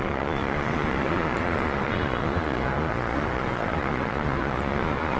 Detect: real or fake fake